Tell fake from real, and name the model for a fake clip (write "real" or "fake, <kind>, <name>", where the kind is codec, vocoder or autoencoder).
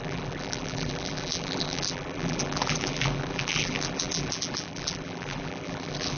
fake, vocoder, BigVGAN v2